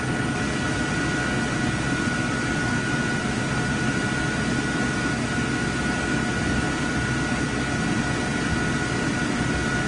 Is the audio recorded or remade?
recorded